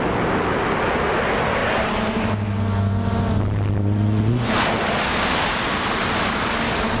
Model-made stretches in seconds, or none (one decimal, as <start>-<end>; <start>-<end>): none